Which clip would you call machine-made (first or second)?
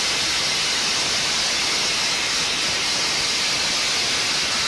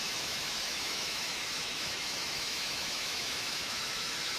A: second